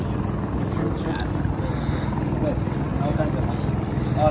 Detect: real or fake real